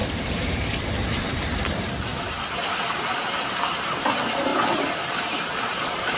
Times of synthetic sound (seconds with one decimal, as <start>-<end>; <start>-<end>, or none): 0.0-2.1; 3.1-6.2